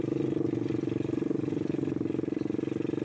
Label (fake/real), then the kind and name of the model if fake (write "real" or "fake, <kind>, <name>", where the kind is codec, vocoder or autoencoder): real